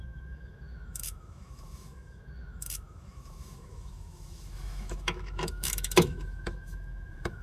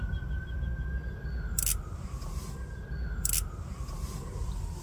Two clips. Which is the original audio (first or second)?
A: second